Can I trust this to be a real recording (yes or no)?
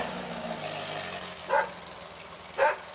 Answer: yes